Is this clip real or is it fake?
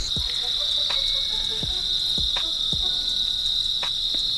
real